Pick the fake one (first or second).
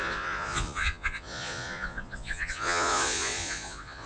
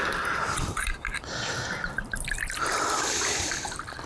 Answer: first